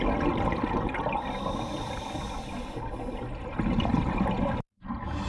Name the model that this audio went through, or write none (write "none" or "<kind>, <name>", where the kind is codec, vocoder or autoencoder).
none